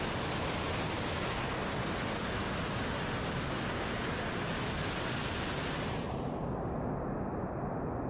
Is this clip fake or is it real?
real